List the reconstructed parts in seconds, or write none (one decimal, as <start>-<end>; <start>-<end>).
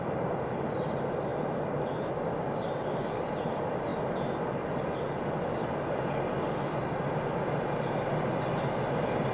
none